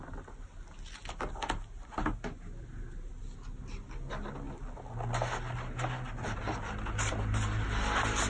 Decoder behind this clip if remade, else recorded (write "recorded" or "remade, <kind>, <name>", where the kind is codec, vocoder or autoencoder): recorded